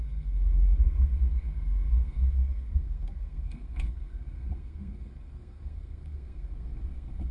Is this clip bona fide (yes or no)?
no